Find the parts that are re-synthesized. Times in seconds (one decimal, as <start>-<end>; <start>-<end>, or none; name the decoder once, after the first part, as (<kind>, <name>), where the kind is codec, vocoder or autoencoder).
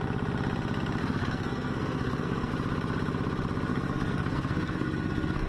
1.0-2.5 (codec, SNAC); 3.7-5.5